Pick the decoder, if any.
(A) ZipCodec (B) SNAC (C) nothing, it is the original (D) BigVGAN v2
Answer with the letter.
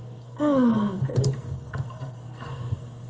B